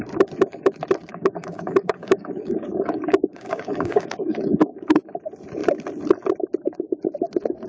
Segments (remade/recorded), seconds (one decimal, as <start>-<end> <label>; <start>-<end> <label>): 0.0-1.1 recorded; 1.1-5.0 remade; 5.0-7.7 recorded